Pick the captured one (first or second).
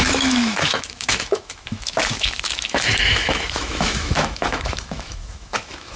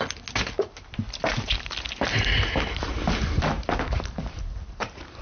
second